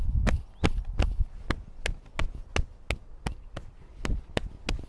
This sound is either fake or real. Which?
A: real